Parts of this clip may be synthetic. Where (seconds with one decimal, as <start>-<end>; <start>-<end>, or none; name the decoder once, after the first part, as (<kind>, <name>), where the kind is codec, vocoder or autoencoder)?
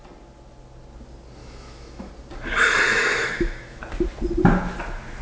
1.4-2.1 (autoencoder, DAC-VAE); 2.9-3.8